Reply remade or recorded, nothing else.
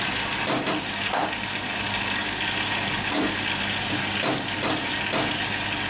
recorded